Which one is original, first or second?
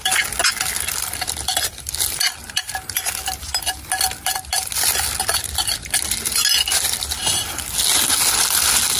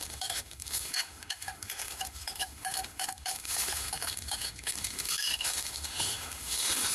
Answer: first